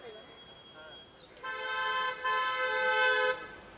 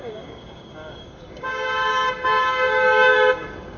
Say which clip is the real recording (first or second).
first